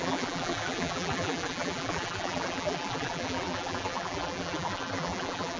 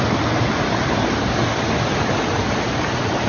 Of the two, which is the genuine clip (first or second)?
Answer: second